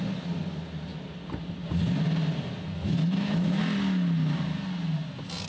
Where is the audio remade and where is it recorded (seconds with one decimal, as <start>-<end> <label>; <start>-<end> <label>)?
0.0-2.8 recorded; 2.8-3.6 remade; 3.6-5.5 recorded